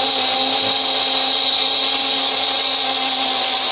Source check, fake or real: real